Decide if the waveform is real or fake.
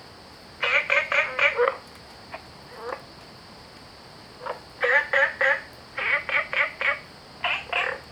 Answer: real